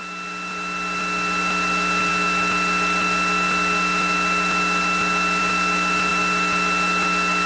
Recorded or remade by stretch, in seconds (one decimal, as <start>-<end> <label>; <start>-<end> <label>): 0.0-7.5 recorded